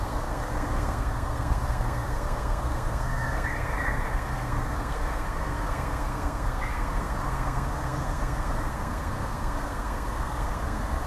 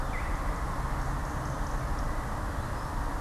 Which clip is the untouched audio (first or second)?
second